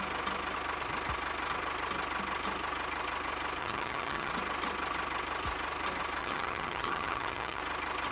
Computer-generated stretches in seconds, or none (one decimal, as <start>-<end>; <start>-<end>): 3.6-4.3; 6.2-7.6